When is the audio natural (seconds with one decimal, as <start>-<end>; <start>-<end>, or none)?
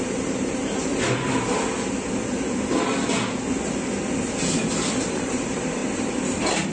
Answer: 0.9-4.9; 5.8-6.7